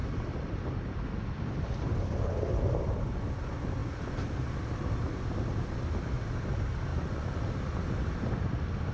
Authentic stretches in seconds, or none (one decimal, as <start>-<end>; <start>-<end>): 0.0-6.9; 7.4-8.9